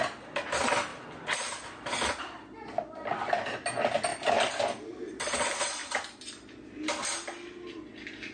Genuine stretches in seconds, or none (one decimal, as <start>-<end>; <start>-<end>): 0.0-0.9; 1.9-4.1; 4.6-5.8; 6.6-8.3